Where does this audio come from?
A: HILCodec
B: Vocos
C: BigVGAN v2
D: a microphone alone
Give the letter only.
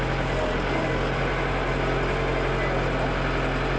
D